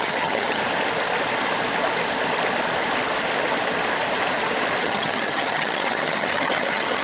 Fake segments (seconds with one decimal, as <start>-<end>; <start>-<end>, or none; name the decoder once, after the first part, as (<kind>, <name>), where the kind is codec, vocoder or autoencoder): 0.0-0.6 (vocoder, HiFi-GAN); 4.8-7.0